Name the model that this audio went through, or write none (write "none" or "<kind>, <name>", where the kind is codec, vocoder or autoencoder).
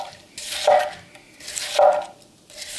none